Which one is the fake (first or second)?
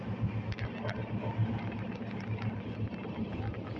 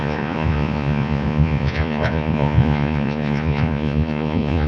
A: second